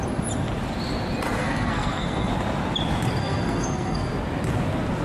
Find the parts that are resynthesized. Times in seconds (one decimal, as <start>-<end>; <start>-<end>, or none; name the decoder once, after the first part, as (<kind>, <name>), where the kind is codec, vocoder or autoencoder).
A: 1.4-2.3 (codec, SNAC); 3.2-4.1